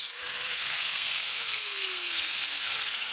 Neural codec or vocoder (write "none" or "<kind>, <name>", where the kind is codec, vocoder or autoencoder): codec, SNAC